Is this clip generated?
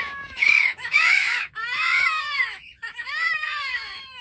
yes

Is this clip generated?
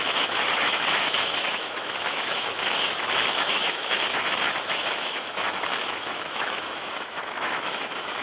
yes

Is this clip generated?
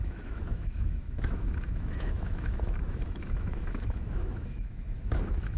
yes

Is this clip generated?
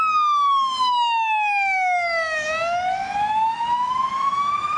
yes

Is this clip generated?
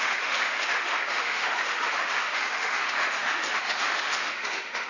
yes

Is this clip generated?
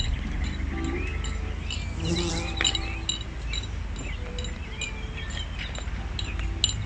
no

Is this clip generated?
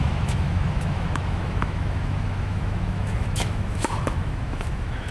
yes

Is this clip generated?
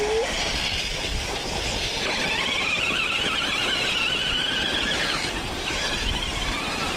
no